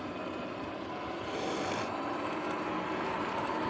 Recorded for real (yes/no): yes